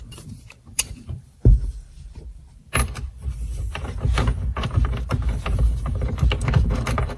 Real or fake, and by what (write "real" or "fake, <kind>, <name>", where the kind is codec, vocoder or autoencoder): fake, vocoder, BigVGAN v2